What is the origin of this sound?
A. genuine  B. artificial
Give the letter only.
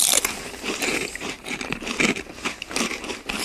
B